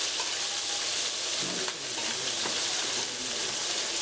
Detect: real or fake real